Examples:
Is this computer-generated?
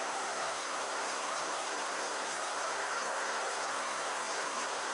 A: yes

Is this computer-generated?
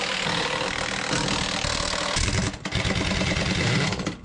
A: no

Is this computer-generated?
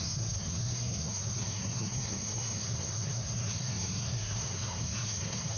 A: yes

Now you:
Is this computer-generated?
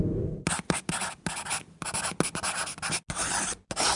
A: no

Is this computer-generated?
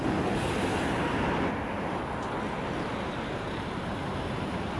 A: no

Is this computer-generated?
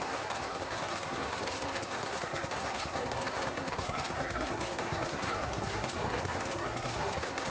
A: yes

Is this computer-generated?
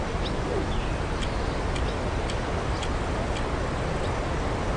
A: no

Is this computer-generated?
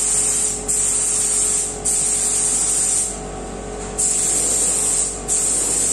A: no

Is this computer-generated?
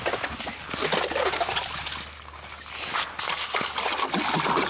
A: no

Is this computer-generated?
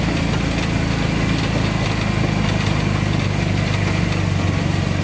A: no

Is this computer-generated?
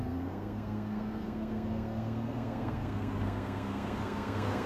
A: yes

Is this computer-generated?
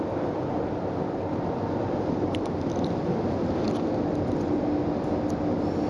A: no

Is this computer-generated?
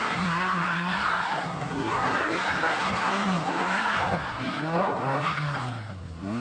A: yes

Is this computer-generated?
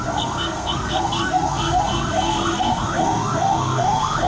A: yes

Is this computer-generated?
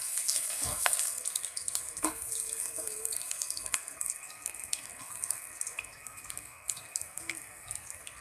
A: yes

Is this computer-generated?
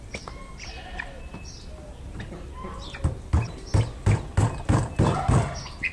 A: no